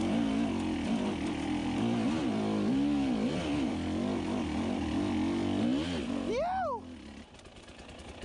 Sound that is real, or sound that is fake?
real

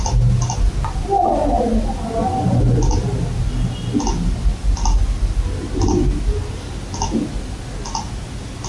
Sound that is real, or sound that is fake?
real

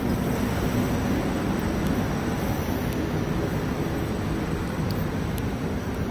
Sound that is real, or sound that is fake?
real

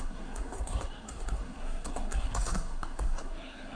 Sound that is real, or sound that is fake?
fake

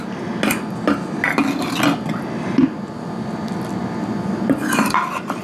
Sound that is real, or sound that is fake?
real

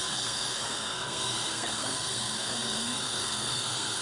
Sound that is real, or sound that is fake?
fake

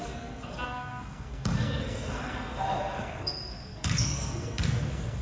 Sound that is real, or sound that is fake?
fake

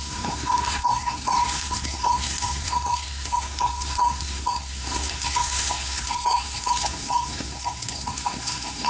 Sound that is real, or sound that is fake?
fake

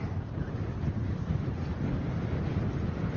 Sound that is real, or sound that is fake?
real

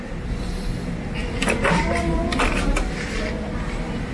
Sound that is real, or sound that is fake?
real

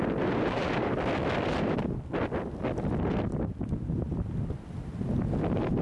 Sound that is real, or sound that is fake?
real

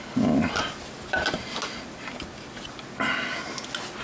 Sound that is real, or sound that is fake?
real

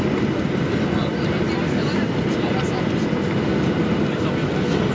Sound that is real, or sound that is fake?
real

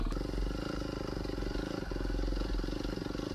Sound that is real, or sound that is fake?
real